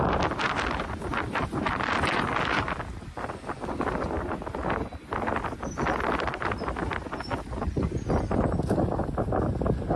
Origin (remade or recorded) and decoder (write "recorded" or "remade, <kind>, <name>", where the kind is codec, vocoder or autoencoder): recorded